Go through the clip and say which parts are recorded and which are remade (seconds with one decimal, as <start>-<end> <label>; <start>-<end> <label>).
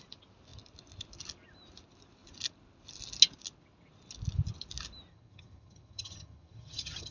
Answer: 0.0-5.1 recorded; 5.1-7.1 remade